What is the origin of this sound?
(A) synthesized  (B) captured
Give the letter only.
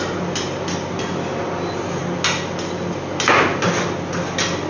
B